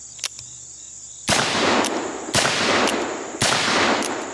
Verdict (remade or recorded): remade